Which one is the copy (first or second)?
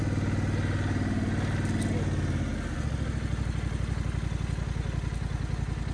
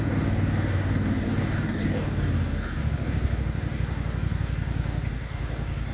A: second